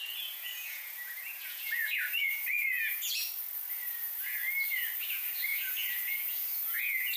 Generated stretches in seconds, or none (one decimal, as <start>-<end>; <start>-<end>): 0.0-3.2; 3.7-4.4; 5.0-7.2